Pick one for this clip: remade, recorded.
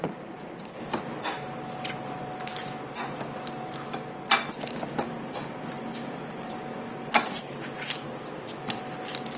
recorded